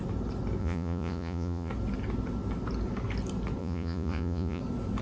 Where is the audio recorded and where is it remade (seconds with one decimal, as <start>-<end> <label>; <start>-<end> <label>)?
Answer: 0.0-0.6 recorded; 0.6-1.7 remade; 1.7-3.6 recorded; 3.6-4.6 remade; 4.6-5.0 recorded